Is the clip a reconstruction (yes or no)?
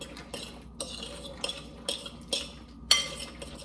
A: no